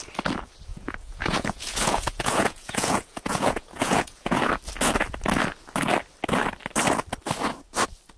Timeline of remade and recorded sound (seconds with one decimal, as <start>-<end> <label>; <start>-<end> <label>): 0.0-0.7 recorded; 0.7-4.5 remade; 4.5-8.2 recorded